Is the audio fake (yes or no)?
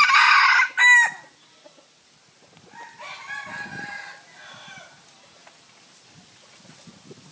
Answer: no